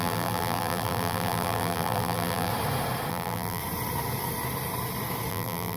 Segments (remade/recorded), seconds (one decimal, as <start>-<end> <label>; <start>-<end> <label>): 0.0-2.5 remade; 2.5-3.1 recorded; 3.1-3.6 remade; 3.6-5.3 recorded; 5.3-5.8 remade